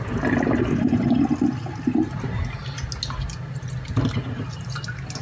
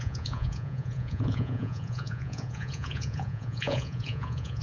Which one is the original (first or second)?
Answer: first